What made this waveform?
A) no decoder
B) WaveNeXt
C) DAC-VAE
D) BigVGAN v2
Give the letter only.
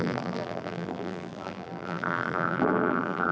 D